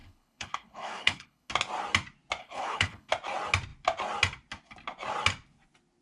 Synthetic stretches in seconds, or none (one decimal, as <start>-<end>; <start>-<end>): 0.0-1.5; 2.4-3.1